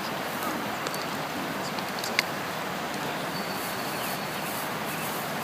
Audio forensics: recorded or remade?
remade